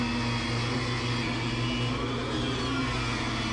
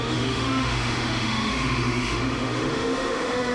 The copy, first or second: second